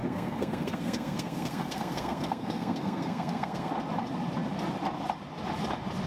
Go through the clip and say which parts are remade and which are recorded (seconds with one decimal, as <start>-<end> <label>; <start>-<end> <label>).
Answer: 0.0-3.7 remade; 3.7-6.1 recorded